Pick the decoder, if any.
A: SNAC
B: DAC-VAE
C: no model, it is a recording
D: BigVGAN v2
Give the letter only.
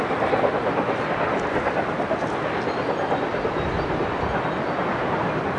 C